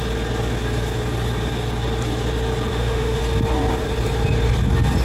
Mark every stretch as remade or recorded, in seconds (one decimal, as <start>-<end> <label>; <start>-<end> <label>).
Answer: 0.0-2.7 recorded; 2.7-3.2 remade; 3.2-5.0 recorded